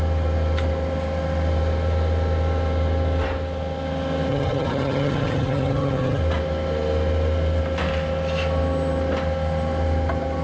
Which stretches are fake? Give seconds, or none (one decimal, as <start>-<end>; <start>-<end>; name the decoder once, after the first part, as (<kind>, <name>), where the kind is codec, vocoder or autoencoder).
4.3-6.2 (vocoder, HiFi-GAN)